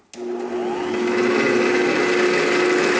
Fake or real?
real